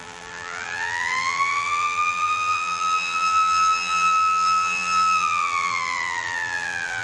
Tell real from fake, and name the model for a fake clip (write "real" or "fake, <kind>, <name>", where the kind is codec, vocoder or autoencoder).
fake, vocoder, BigVGAN v2